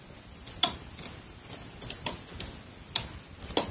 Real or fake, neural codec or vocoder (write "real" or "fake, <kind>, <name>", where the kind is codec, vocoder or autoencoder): real